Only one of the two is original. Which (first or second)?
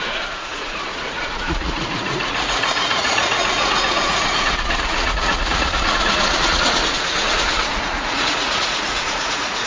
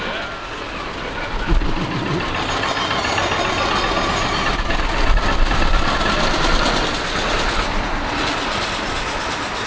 second